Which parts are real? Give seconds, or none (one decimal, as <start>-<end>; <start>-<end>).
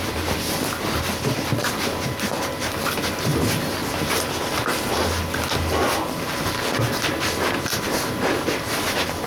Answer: 0.0-9.3